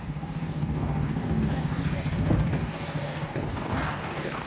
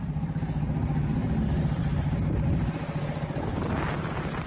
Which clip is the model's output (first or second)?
first